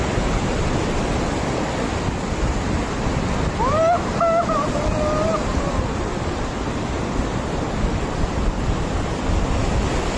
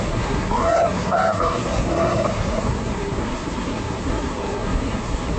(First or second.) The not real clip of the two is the second